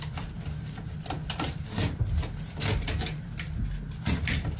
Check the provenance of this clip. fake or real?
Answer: real